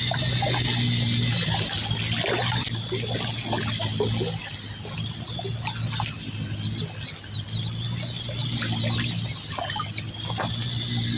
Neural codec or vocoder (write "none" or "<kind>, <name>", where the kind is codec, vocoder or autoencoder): none